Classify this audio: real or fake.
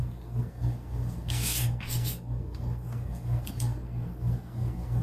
fake